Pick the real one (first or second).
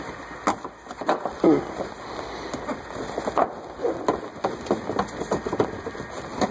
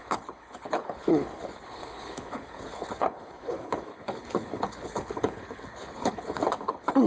first